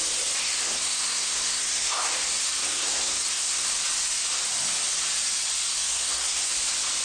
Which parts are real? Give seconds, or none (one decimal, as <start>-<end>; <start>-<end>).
0.0-0.4; 2.1-2.6; 3.7-5.7; 6.5-7.0